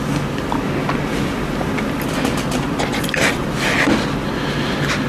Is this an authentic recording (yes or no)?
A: yes